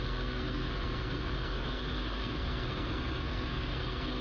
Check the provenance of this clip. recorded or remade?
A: remade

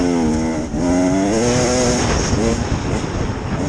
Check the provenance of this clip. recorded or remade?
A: recorded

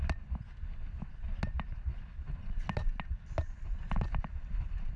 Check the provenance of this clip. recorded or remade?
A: recorded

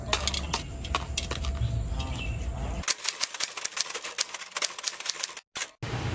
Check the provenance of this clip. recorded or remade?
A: recorded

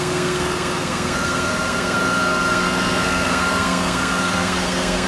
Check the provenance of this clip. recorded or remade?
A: remade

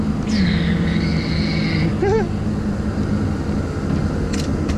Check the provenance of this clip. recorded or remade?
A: recorded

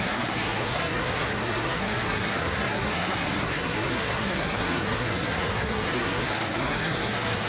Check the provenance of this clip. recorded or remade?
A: remade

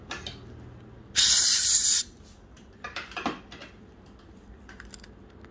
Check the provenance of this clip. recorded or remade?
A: recorded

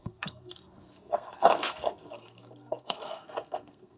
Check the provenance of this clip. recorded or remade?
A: remade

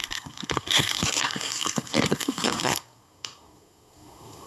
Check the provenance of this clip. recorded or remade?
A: remade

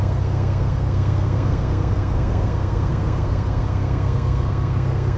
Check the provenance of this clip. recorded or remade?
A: remade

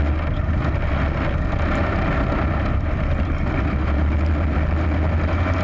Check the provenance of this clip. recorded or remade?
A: recorded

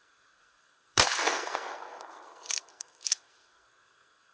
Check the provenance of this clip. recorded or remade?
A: remade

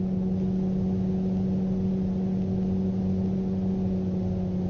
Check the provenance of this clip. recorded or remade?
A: recorded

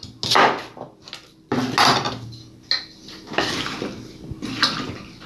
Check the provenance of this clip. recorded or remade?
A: recorded